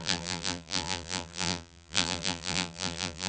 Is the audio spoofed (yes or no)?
yes